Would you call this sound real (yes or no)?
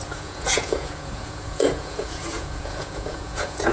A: no